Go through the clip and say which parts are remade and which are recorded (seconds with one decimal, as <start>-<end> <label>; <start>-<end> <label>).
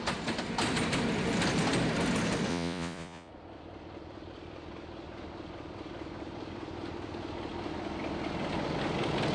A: 0.0-2.5 recorded; 2.5-3.3 remade; 3.3-9.3 recorded